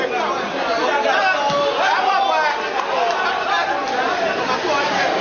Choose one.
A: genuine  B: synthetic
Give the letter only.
A